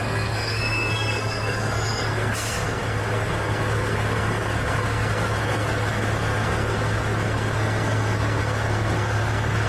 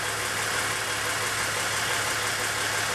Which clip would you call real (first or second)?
second